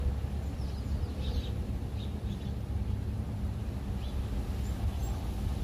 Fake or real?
real